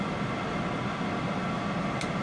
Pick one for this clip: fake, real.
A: real